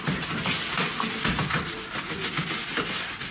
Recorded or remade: recorded